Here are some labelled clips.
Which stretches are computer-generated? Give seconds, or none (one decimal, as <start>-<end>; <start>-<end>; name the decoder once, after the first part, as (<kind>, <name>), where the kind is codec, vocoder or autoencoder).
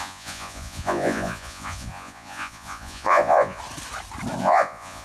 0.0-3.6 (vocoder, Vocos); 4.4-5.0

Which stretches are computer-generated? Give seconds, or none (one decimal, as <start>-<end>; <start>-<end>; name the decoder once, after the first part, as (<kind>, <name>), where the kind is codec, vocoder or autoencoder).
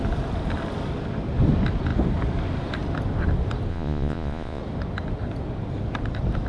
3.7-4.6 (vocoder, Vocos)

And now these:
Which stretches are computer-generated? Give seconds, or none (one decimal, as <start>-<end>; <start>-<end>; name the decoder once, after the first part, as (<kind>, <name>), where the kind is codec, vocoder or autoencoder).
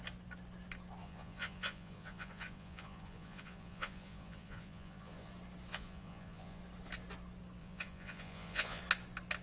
1.0-5.3 (vocoder, Vocos); 5.7-6.6; 7.6-8.8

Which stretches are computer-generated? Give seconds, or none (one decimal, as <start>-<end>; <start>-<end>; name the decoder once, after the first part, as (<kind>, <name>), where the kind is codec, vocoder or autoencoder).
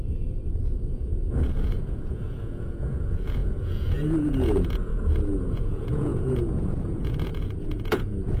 0.7-4.9 (vocoder, Vocos); 5.4-8.4